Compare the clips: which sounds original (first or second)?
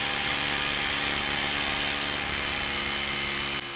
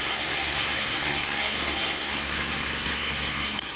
first